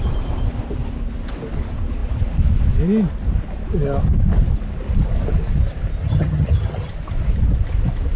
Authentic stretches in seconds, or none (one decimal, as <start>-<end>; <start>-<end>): 0.0-6.0; 6.9-8.2